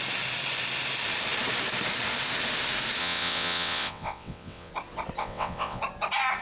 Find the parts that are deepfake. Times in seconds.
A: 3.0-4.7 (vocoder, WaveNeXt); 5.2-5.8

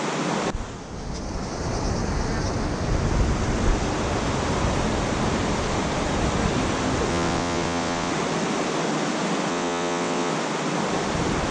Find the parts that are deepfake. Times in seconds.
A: 7.1-8.1 (vocoder, WaveNeXt); 9.5-10.3

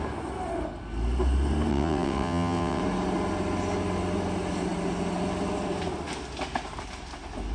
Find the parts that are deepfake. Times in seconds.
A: 1.7-2.8 (vocoder, WaveNeXt)

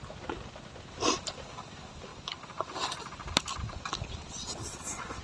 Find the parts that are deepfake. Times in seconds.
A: 4.4-5.2 (vocoder, WaveNeXt)

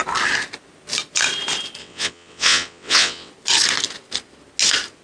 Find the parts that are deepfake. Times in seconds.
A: 1.8-3.3 (vocoder, WaveNeXt)